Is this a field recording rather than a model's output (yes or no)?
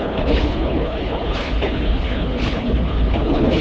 no